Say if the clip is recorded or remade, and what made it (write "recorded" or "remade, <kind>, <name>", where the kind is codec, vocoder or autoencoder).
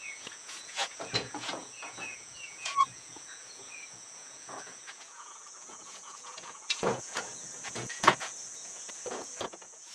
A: remade, vocoder, Vocos